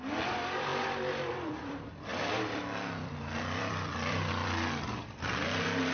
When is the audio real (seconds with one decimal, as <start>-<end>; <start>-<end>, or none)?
none